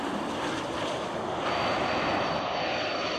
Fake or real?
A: real